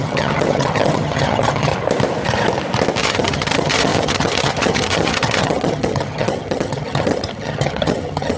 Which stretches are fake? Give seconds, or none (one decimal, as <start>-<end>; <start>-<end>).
0.0-1.7; 3.0-8.4